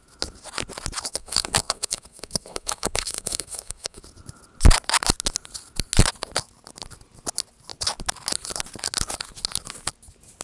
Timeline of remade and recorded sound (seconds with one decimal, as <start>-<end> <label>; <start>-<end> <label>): 0.0-1.1 recorded; 1.1-4.0 remade; 4.0-10.4 recorded